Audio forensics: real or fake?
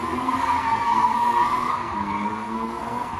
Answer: fake